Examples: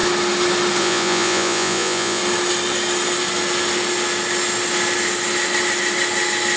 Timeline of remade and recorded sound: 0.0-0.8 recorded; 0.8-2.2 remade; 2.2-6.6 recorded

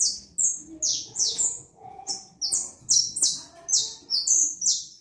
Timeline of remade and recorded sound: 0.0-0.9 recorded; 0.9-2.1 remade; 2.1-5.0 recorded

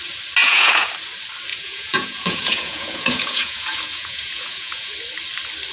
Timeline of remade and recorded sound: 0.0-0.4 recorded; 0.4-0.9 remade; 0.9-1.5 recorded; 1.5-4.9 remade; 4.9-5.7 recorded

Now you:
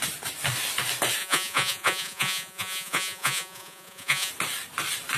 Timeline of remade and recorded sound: 0.0-1.2 recorded; 1.2-4.3 remade; 4.3-5.2 recorded

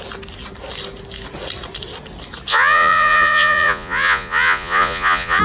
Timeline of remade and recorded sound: 0.0-2.5 recorded; 2.5-5.4 remade

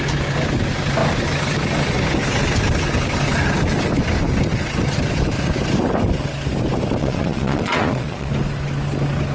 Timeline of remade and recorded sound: 0.0-7.0 recorded; 7.0-8.3 remade; 8.3-9.3 recorded

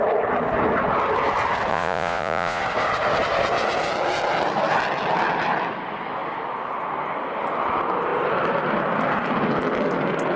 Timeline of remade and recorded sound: 0.0-1.7 recorded; 1.7-2.6 remade; 2.6-10.4 recorded

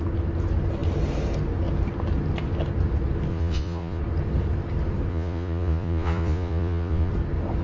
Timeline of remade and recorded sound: 0.0-3.3 recorded; 3.3-4.0 remade; 4.0-5.1 recorded; 5.1-7.1 remade; 7.1-7.6 recorded